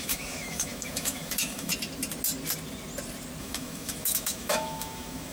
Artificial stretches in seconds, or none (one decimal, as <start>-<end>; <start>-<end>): 0.0-1.7; 3.4-5.3